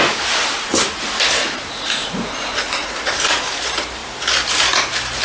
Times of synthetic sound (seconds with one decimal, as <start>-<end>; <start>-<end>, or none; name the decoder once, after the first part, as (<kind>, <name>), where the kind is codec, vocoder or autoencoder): 1.4-3.0 (vocoder, Vocos)